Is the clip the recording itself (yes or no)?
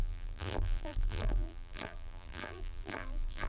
no